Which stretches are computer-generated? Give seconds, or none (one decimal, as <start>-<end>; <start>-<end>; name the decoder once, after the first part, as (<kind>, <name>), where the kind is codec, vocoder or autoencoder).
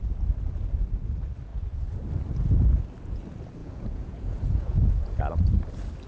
3.6-5.2 (vocoder, Vocos)